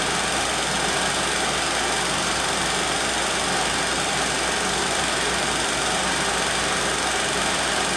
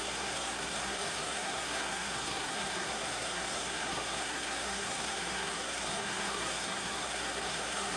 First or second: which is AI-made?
second